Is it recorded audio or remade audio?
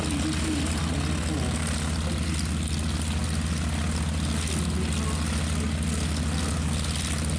recorded